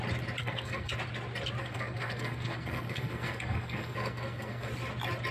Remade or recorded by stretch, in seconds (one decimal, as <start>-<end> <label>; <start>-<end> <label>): 0.0-0.4 recorded; 0.4-0.9 remade; 0.9-1.6 recorded; 1.6-4.7 remade; 4.7-5.3 recorded